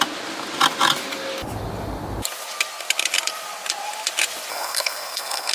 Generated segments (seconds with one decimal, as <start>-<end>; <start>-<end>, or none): 4.5-5.5